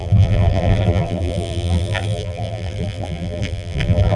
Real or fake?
fake